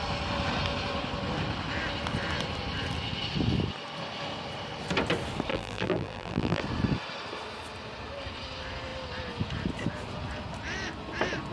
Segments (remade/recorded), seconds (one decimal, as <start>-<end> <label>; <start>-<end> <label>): 0.0-5.5 recorded; 5.5-6.6 remade; 6.6-11.5 recorded